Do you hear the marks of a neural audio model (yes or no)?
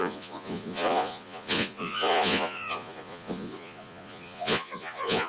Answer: yes